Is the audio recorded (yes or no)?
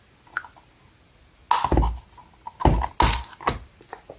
yes